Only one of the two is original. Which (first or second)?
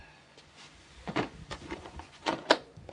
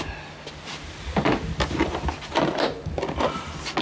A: second